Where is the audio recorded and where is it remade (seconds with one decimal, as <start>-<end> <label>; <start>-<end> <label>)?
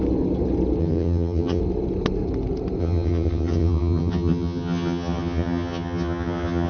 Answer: 0.0-0.8 recorded; 0.8-1.6 remade; 1.6-2.8 recorded; 2.8-6.7 remade